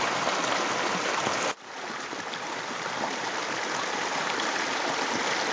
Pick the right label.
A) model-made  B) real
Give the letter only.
B